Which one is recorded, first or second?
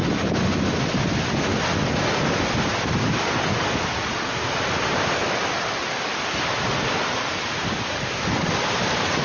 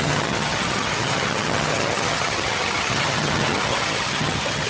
first